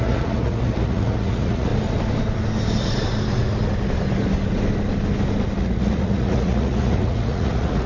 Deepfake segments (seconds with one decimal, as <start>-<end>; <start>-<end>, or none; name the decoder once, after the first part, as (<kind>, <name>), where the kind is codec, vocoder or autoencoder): 0.0-1.7 (vocoder, Vocos); 5.6-7.9